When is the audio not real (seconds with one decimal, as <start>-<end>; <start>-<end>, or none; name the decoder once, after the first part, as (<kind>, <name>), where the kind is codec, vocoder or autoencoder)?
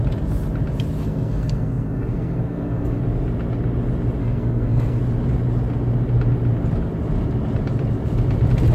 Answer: 1.0-3.0 (codec, SNAC); 4.2-5.0